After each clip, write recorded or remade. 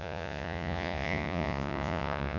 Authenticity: remade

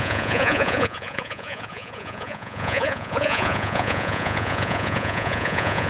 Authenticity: remade